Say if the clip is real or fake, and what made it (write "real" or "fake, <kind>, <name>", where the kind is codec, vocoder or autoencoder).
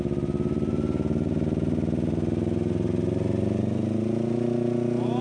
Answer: real